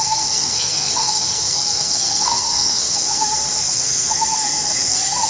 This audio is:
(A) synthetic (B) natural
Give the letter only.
A